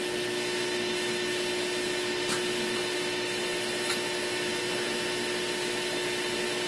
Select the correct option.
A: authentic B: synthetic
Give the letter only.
A